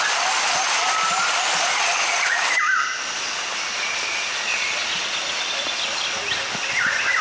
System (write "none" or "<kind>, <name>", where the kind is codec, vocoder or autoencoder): none